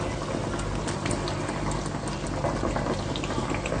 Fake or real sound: real